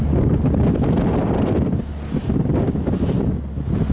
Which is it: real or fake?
real